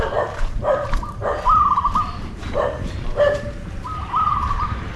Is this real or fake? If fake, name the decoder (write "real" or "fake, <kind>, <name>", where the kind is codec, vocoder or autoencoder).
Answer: fake, vocoder, BigVGAN v2